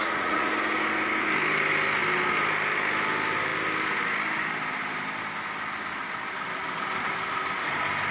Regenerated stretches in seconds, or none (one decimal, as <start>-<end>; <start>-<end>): 0.0-0.5